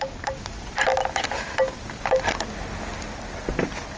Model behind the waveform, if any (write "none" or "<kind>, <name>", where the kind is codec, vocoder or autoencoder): none